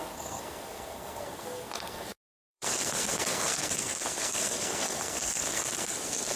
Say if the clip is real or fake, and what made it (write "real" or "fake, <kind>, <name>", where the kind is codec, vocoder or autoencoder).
fake, codec, SNAC